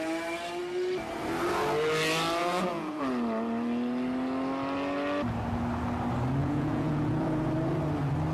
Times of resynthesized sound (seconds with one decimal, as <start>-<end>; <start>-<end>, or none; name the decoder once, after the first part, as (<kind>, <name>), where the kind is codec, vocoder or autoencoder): 2.4-3.0 (vocoder, Vocos); 6.4-7.5